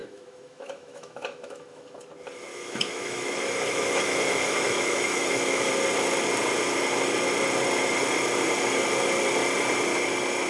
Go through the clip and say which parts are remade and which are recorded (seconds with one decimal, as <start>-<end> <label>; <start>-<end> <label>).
0.0-2.0 remade; 2.0-2.5 recorded; 2.5-5.7 remade; 5.7-10.5 recorded